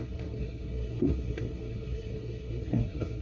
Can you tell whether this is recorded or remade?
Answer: remade